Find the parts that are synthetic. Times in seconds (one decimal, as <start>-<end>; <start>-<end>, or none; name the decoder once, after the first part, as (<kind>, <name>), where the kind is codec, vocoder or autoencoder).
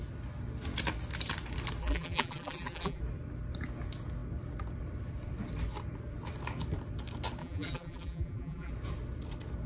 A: 1.8-3.0 (vocoder, BigVGAN v2); 7.4-8.7